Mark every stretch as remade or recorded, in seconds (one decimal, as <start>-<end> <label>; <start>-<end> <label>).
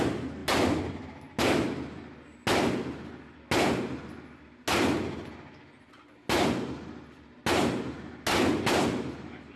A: 0.0-9.6 recorded